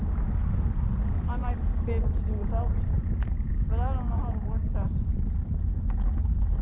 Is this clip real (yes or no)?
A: yes